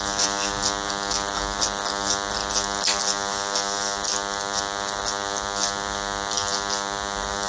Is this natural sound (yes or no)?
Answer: yes